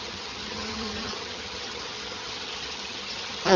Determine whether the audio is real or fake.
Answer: fake